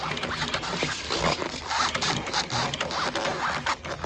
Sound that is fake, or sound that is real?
real